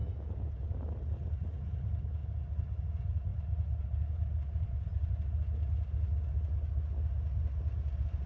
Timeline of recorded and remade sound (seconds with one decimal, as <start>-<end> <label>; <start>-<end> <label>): 0.0-3.3 recorded; 3.3-5.1 remade; 5.1-8.3 recorded